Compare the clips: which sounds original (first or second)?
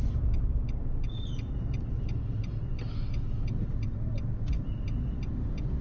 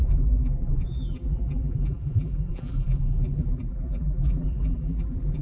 first